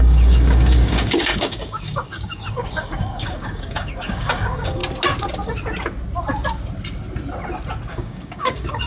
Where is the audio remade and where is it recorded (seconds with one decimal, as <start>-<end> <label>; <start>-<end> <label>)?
0.0-4.8 remade; 4.8-7.9 recorded; 7.9-8.9 remade